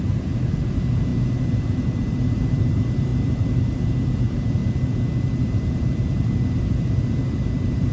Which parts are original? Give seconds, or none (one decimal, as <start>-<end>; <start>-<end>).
4.6-5.4